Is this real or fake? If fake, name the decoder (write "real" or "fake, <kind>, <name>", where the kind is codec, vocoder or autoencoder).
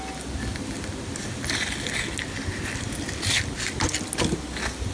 real